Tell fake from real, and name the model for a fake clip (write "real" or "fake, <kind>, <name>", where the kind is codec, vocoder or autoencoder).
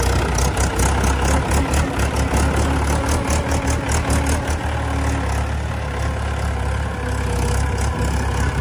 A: real